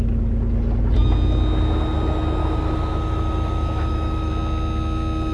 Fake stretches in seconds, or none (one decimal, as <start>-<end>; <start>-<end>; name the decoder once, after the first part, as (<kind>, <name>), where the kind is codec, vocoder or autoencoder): 2.4-4.3 (autoencoder, DAC-VAE)

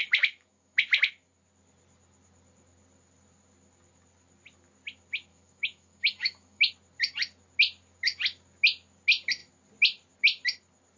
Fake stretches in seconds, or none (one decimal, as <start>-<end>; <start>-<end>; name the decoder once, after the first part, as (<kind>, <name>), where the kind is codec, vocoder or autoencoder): 0.0-0.8 (autoencoder, DAC-VAE); 5.3-6.7

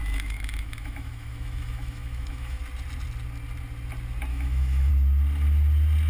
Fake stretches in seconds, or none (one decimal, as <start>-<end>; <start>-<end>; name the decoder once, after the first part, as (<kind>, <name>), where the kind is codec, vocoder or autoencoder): 0.0-2.6 (autoencoder, DAC-VAE); 4.3-4.9

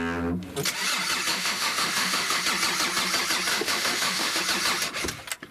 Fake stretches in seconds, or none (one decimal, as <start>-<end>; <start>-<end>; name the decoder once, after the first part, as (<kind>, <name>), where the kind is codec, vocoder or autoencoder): 1.3-2.4 (autoencoder, DAC-VAE); 3.5-4.4

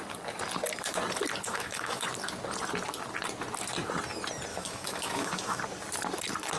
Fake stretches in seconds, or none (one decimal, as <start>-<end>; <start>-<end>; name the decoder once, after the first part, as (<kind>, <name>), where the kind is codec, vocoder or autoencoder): 1.5-2.0 (autoencoder, DAC-VAE); 4.5-5.6

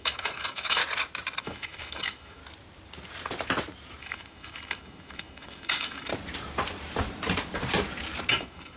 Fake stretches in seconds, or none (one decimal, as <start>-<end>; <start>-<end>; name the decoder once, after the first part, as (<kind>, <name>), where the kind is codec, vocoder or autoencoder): 0.0-0.8 (autoencoder, DAC-VAE); 1.4-2.4; 4.0-6.1; 8.3-8.8

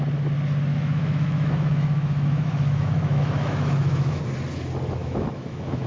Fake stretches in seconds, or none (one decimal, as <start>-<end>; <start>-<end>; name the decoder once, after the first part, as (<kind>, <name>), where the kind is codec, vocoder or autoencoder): 0.7-4.2 (autoencoder, DAC-VAE); 5.0-5.9

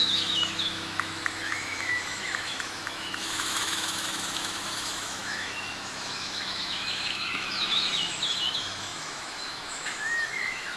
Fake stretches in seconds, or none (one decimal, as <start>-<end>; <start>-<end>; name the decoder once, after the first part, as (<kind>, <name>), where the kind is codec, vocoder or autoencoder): 0.0-10.8 (autoencoder, DAC-VAE)